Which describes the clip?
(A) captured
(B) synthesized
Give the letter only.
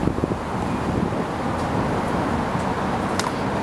A